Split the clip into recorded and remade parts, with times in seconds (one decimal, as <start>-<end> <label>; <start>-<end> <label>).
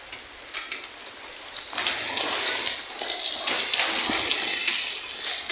0.0-5.5 recorded